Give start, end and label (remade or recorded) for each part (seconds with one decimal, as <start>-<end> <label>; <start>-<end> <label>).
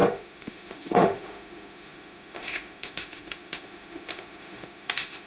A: 0.0-5.3 remade